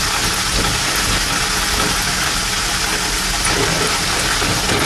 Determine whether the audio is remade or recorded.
recorded